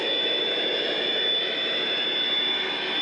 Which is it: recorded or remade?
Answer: recorded